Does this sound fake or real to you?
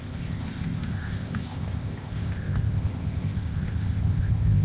fake